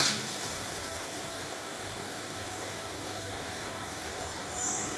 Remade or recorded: remade